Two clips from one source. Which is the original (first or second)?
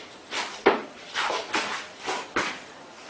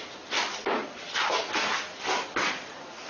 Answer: second